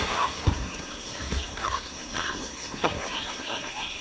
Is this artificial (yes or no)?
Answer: yes